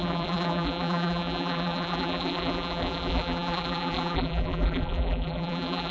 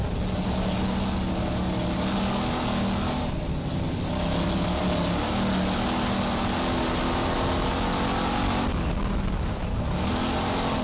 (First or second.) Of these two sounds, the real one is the second